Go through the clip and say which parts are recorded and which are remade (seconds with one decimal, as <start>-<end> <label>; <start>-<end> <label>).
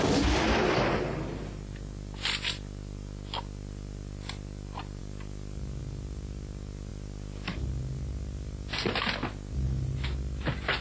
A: 0.0-10.8 recorded